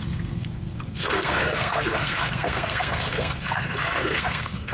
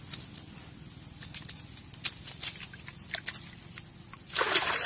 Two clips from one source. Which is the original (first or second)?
second